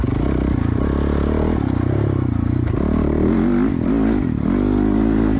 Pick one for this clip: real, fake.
real